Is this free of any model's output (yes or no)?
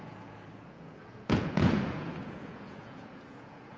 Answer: no